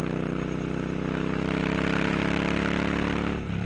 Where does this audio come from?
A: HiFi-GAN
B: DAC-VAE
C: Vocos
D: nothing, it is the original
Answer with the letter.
D